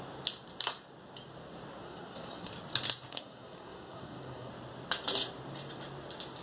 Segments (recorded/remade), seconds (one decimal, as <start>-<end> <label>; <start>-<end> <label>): 0.0-1.8 recorded; 1.8-2.5 remade; 2.5-3.1 recorded; 3.1-4.5 remade; 4.5-6.4 recorded